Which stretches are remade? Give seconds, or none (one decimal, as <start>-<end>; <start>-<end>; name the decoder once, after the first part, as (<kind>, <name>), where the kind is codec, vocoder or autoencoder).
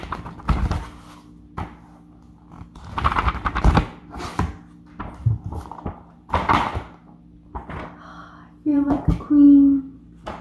8.7-9.3 (vocoder, BigVGAN v2)